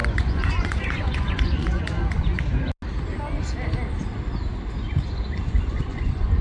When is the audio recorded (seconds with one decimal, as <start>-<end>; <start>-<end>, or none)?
2.3-5.4